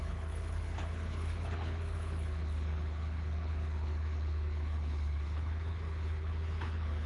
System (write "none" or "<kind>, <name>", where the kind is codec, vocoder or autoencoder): codec, HILCodec